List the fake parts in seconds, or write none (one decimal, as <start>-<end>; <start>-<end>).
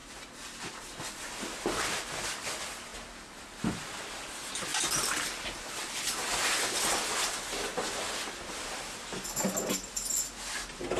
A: 4.7-5.4